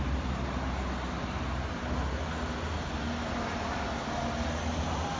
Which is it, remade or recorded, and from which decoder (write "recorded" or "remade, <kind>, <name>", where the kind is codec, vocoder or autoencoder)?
recorded